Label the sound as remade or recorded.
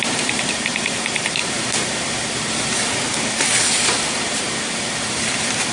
remade